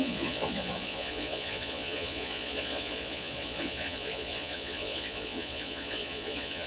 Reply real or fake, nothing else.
fake